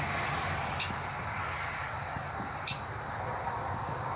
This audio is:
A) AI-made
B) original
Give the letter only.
B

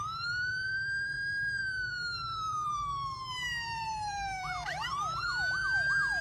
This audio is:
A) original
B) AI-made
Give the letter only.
B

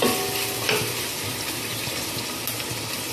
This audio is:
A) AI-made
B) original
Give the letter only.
B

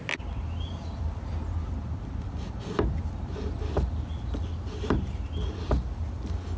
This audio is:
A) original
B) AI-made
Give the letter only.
A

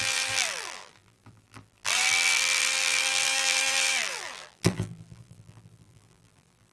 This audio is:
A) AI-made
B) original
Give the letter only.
A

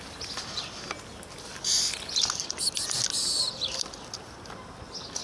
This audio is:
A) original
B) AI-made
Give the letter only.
A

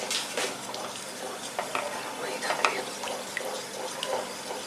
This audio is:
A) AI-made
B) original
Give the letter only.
A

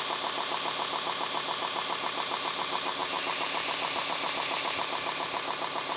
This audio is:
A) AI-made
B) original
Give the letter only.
B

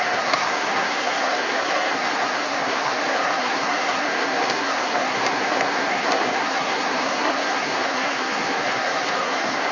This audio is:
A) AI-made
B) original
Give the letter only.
A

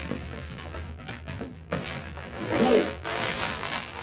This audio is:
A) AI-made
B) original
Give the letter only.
A